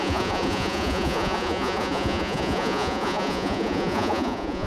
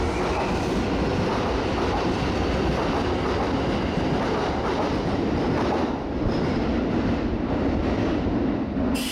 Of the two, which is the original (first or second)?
second